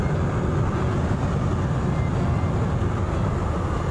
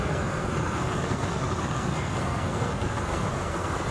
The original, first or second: first